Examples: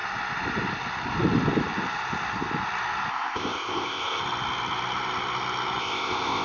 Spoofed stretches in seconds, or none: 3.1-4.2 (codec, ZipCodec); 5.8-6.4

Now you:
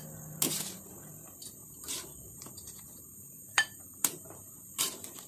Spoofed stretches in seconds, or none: 1.6-4.8 (vocoder, BigVGAN v2)

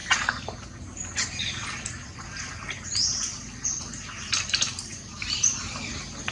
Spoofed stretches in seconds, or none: 4.9-5.4 (vocoder, BigVGAN v2)

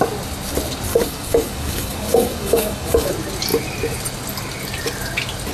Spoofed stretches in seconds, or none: 0.9-3.1 (codec, DAC)

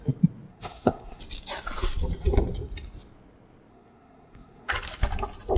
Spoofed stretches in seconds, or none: 0.5-1.2 (codec, SNAC); 3.7-4.7

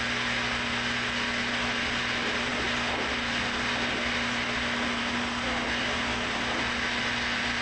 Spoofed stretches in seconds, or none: none